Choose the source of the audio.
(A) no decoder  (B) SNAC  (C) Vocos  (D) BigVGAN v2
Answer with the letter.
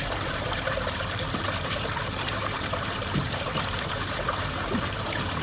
D